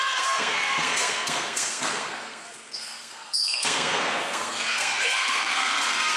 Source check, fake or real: fake